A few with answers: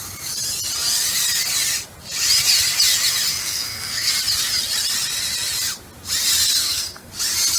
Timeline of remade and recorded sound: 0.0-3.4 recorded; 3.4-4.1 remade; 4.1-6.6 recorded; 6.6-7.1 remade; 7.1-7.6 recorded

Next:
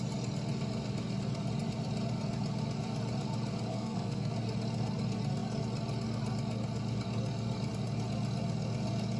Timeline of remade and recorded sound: 0.0-3.7 recorded; 3.7-4.3 remade; 4.3-9.2 recorded

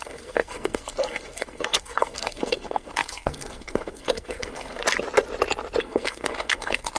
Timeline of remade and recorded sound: 0.0-4.8 remade; 4.8-5.8 recorded; 5.8-7.0 remade

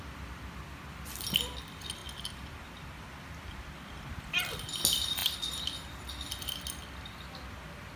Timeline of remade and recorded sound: 0.0-8.0 recorded

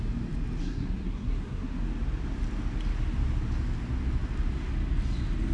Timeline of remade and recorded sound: 0.0-0.6 recorded; 0.6-1.8 remade; 1.8-5.5 recorded

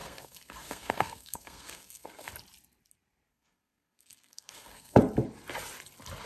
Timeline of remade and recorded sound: 0.0-2.3 remade; 2.3-3.3 recorded; 3.3-5.0 remade; 5.0-6.3 recorded